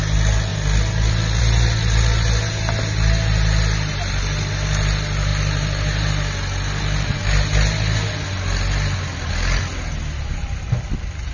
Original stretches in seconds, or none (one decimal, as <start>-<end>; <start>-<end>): 0.0-11.3

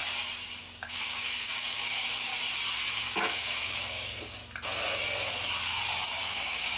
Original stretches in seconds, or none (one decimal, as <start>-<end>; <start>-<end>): 0.0-0.6; 2.3-2.9; 4.4-6.2

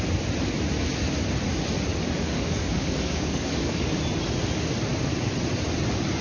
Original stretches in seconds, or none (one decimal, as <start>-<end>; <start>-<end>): 0.0-1.9; 4.0-6.2

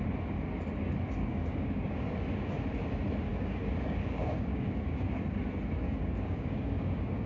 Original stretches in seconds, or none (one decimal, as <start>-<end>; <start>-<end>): 0.0-1.2; 2.2-3.3; 5.2-5.8

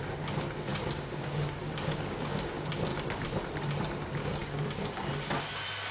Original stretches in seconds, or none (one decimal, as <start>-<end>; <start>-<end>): 0.0-0.7; 2.5-4.2; 5.1-5.9

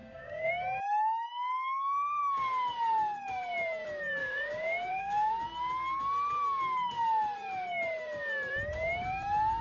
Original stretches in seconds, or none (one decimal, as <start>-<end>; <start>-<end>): 0.5-4.2; 5.3-9.6

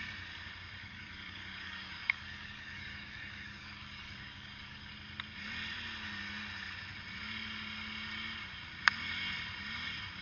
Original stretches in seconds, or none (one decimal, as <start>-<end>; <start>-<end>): 0.0-0.8; 4.9-10.2